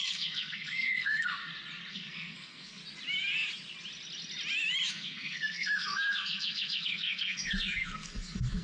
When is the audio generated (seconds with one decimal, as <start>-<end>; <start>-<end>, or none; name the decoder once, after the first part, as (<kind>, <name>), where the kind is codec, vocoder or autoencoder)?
0.0-1.4 (codec, SNAC); 1.9-2.8; 4.9-8.6